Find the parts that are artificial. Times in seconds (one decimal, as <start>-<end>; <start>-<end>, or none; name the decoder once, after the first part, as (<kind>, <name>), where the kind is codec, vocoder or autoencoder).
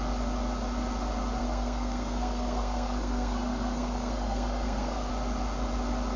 1.4-5.1 (codec, SNAC)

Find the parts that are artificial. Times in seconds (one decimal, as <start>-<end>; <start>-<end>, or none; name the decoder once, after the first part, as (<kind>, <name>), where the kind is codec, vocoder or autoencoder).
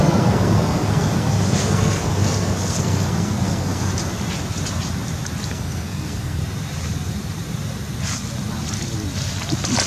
0.0-3.9 (codec, SNAC); 5.5-6.4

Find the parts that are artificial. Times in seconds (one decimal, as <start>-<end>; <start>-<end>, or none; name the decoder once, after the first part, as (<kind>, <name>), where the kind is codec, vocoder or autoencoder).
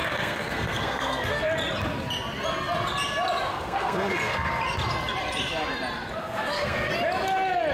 0.0-1.5 (codec, SNAC); 3.5-4.6; 6.2-6.9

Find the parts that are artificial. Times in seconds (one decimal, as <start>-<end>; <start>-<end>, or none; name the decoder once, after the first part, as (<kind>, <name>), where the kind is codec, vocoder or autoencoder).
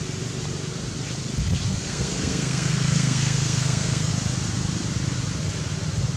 1.7-4.1 (codec, SNAC)